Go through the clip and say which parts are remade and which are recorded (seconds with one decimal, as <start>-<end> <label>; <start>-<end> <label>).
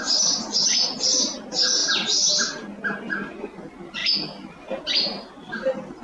0.0-6.0 recorded